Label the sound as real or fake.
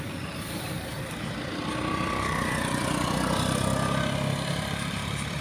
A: fake